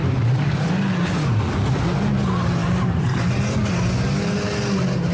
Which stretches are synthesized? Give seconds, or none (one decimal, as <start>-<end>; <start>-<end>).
0.0-0.5; 2.6-3.4